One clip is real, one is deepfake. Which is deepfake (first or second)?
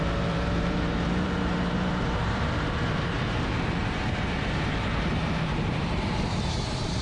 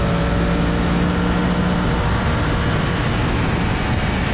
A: first